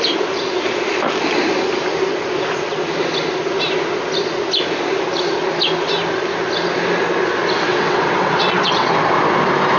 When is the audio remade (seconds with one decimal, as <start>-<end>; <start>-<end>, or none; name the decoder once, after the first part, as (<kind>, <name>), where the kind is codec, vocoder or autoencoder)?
7.7-8.9 (vocoder, WaveNeXt)